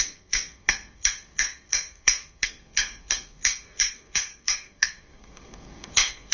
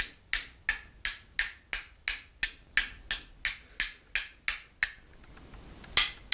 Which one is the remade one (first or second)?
first